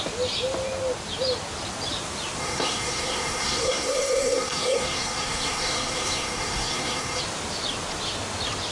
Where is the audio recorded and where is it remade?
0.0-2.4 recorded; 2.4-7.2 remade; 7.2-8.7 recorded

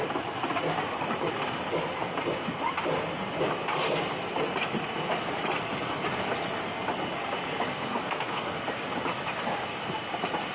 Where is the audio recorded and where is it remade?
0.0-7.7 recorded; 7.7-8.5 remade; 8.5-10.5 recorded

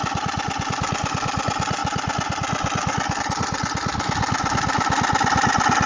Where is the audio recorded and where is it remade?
0.0-5.9 recorded

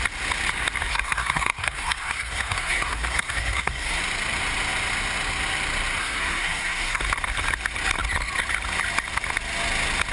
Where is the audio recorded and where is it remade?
0.0-0.9 recorded; 0.9-4.0 remade; 4.0-6.0 recorded; 6.0-7.0 remade; 7.0-10.1 recorded

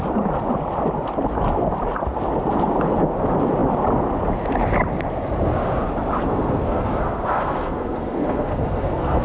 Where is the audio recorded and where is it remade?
0.0-6.3 recorded; 6.3-9.2 remade

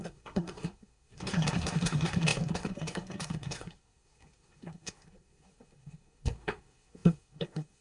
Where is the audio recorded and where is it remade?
0.0-7.8 remade